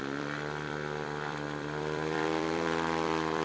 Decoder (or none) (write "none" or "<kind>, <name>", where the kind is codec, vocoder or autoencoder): vocoder, BigVGAN v2